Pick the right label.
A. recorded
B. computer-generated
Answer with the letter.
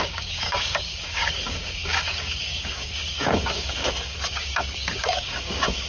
B